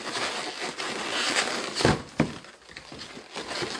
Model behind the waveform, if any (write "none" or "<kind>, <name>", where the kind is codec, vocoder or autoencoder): none